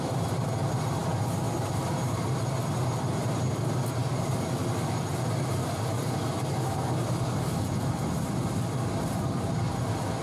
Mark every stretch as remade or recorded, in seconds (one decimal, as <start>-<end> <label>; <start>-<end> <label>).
0.0-10.2 recorded